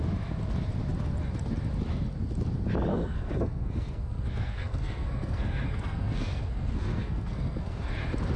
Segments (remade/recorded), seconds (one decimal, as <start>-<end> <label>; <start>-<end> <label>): 0.0-2.9 recorded; 2.9-7.9 remade; 7.9-8.4 recorded